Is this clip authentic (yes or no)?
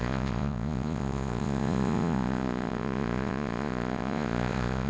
no